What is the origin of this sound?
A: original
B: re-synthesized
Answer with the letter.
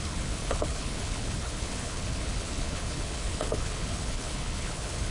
B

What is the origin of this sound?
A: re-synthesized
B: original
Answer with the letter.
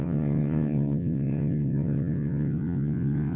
A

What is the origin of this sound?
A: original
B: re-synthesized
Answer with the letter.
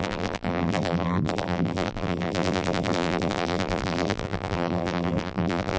B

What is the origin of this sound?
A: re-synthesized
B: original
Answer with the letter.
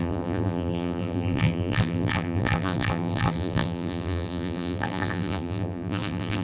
A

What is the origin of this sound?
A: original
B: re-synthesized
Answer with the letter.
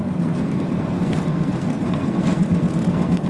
B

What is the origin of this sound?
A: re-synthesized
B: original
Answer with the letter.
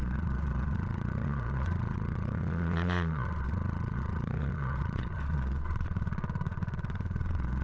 A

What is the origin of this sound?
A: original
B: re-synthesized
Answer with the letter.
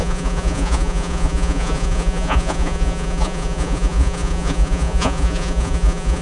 B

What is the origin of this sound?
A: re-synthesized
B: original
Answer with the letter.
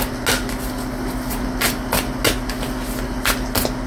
B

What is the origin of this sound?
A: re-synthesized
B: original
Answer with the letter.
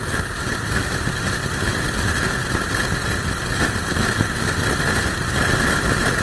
B